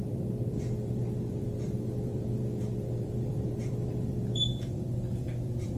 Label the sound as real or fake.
fake